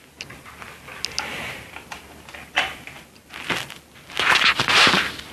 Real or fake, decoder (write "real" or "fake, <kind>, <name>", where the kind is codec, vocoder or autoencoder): real